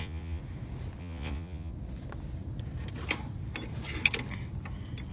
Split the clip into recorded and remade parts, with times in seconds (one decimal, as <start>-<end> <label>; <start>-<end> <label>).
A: 0.0-0.4 remade; 0.4-1.0 recorded; 1.0-1.7 remade; 1.7-5.1 recorded